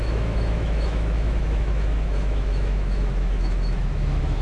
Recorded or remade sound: remade